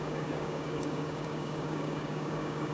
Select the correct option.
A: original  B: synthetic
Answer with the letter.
B